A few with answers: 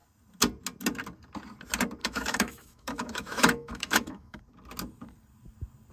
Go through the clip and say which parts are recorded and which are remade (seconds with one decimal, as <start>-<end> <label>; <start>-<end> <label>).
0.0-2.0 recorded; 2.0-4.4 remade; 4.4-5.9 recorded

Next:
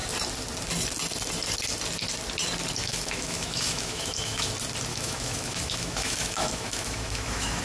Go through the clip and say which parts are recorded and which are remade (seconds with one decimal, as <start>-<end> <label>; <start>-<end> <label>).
0.0-2.8 recorded; 2.8-4.5 remade; 4.5-4.9 recorded; 4.9-7.6 remade

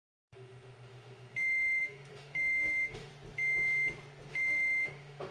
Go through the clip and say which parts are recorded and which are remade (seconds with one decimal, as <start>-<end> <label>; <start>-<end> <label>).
0.0-3.1 remade; 3.1-4.3 recorded; 4.3-5.3 remade

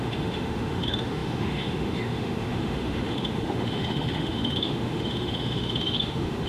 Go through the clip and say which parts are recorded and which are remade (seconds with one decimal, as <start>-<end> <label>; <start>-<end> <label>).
0.0-6.5 remade